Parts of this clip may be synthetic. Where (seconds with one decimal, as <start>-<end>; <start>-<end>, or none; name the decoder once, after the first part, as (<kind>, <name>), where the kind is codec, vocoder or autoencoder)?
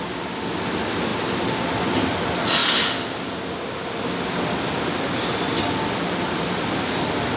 none